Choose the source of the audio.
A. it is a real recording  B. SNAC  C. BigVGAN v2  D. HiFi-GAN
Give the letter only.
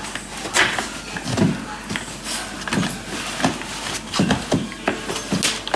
A